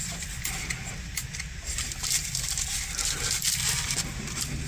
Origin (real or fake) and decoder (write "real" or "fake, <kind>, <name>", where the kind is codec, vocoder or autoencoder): real